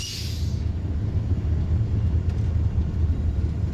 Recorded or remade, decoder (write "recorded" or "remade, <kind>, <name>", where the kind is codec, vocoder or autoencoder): recorded